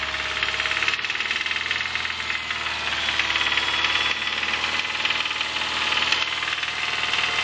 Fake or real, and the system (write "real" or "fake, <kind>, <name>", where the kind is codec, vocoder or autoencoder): real